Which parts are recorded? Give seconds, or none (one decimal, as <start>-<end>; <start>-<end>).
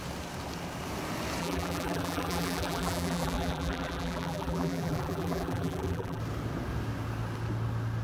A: 0.0-1.4; 6.2-8.0